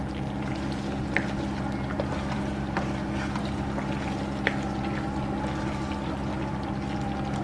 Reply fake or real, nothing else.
real